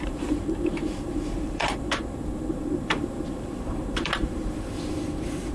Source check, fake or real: fake